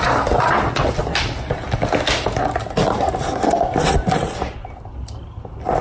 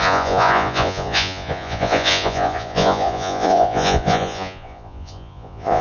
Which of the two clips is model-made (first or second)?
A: second